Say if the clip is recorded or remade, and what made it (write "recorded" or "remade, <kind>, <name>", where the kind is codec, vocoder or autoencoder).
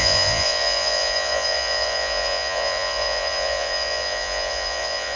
remade, vocoder, Vocos